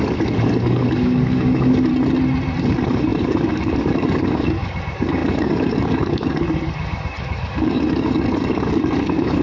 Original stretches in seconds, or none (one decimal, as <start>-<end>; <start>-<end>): 1.9-2.6

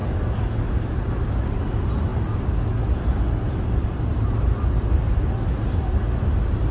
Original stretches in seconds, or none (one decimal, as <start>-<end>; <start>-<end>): 0.0-6.7

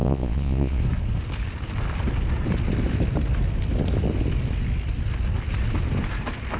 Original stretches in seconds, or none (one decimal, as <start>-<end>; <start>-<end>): 0.8-6.6

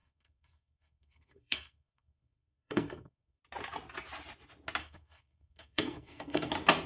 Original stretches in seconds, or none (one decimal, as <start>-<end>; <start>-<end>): 3.4-4.8; 6.5-6.9

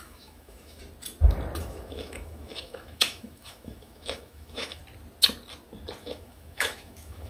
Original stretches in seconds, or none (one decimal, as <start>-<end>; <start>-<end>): 0.8-1.6; 4.8-6.0